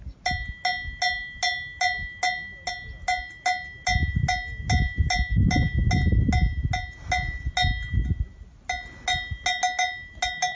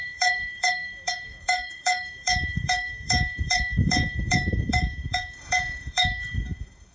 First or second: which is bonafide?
first